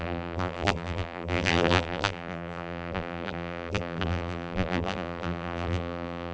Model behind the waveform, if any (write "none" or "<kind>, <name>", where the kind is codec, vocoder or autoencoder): vocoder, BigVGAN v2